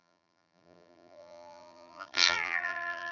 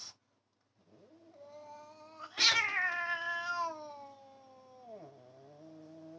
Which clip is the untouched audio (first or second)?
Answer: second